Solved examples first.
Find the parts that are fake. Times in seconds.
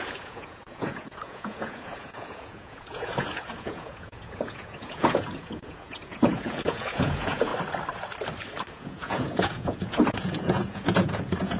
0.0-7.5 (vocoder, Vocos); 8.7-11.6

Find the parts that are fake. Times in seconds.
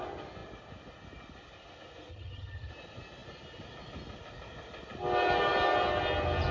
2.1-2.7 (vocoder, HiFi-GAN)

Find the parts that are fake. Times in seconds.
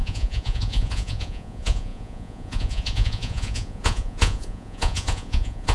0.0-5.7 (vocoder, Vocos)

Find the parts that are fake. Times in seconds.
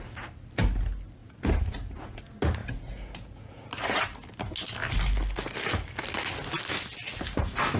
1.2-2.2 (vocoder, Vocos); 2.6-3.7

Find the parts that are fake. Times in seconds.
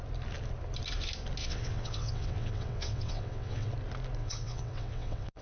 1.4-3.7 (vocoder, WaveNeXt); 4.2-5.4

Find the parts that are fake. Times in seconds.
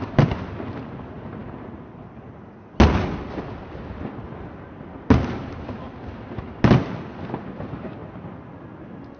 none